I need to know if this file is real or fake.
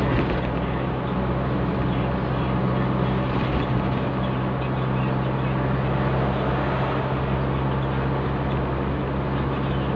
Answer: real